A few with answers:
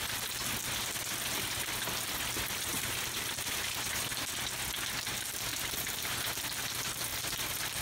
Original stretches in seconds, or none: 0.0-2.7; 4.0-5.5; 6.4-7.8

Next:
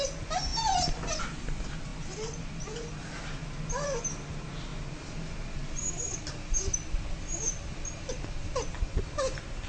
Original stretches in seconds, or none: 0.0-9.7

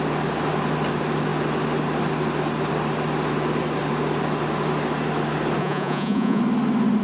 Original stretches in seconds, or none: 0.0-5.6; 6.4-7.0

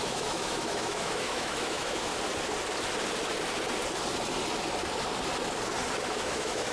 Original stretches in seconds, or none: 2.1-6.1

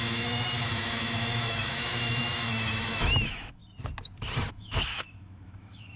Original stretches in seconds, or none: 3.6-4.5

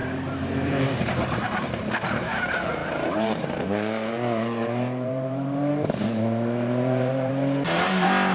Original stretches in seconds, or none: 1.8-2.8; 7.3-8.3